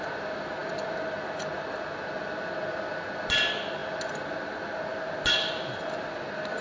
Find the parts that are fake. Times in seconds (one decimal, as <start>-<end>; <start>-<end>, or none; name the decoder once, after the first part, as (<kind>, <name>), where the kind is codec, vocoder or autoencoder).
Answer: none